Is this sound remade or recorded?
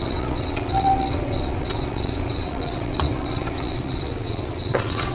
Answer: remade